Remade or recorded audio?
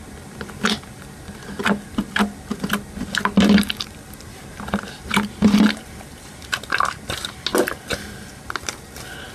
recorded